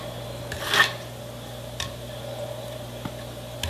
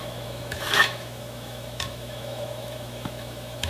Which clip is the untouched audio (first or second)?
first